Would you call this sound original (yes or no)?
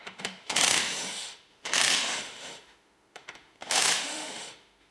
no